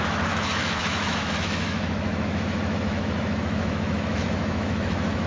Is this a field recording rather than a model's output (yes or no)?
no